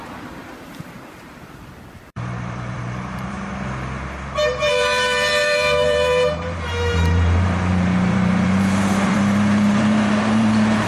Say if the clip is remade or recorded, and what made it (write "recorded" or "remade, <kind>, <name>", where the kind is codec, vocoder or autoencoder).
remade, vocoder, BigVGAN v2